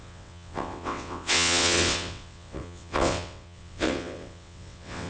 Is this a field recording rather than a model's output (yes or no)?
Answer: no